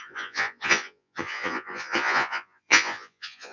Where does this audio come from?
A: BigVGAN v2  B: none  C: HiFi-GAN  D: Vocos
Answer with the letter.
D